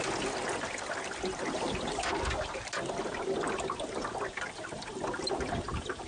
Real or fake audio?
real